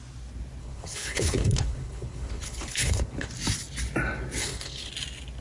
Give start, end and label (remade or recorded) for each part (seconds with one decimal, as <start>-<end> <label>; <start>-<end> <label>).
0.0-0.6 recorded; 0.6-3.3 remade; 3.3-4.4 recorded; 4.4-4.9 remade; 4.9-5.4 recorded